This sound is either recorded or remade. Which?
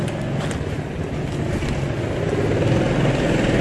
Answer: recorded